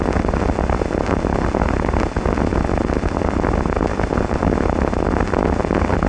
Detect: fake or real real